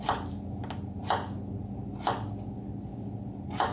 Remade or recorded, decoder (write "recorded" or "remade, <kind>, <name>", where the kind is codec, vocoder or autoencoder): recorded